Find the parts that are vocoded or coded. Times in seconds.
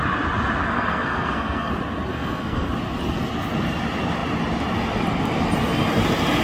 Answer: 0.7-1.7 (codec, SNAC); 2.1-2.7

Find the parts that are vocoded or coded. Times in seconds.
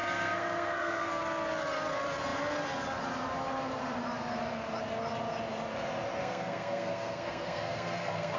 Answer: 0.0-1.2 (codec, SNAC); 6.2-8.4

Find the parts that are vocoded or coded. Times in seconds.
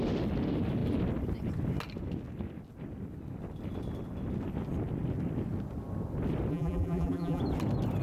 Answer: 6.5-7.4 (vocoder, BigVGAN v2)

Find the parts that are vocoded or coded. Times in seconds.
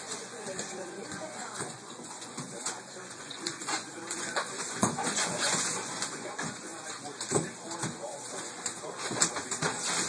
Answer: 0.0-6.7 (vocoder, Vocos); 7.9-8.7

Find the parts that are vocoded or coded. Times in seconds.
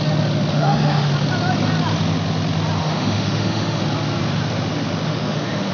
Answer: 0.5-1.1 (autoencoder, DAC-VAE); 2.8-3.8; 5.1-5.7